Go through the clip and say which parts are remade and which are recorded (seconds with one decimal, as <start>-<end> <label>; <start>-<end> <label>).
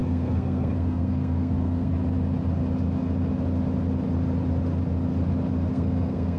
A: 0.0-1.9 remade; 1.9-5.7 recorded; 5.7-6.4 remade